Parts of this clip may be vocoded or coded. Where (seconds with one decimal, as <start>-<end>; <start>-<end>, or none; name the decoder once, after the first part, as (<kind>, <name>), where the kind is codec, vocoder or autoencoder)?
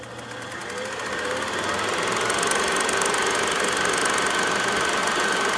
5.0-5.6 (vocoder, BigVGAN v2)